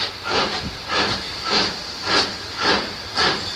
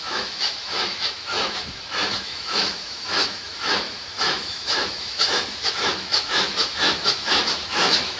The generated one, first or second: second